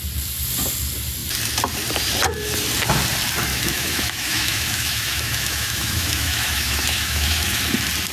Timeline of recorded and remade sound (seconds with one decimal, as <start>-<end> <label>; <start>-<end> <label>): 0.0-3.5 recorded; 3.5-7.6 remade; 7.6-8.1 recorded